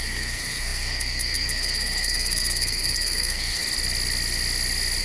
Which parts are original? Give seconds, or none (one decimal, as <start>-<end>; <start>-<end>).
3.6-5.0